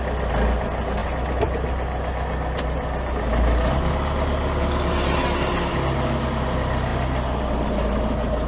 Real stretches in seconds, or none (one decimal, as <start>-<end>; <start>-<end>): 0.0-8.5